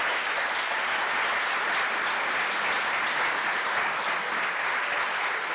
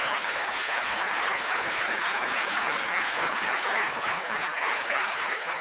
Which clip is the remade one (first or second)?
second